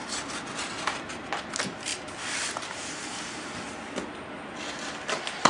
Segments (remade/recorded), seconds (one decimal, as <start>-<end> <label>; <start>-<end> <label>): 0.0-5.5 recorded